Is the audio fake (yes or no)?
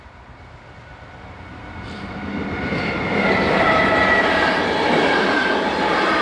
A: no